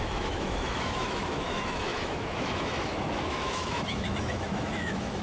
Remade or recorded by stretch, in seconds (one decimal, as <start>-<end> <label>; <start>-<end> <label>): 0.0-5.2 remade